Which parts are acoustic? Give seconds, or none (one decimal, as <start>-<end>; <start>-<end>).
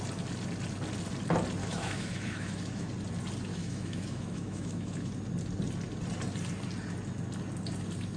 0.0-1.6; 2.9-3.5; 5.1-8.2